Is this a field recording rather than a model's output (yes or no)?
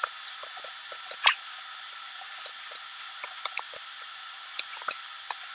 yes